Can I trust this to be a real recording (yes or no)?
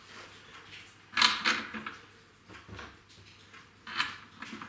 yes